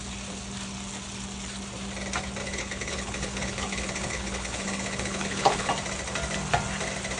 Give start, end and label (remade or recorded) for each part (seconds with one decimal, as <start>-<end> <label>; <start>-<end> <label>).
0.0-2.4 recorded; 2.4-5.7 remade; 5.7-7.2 recorded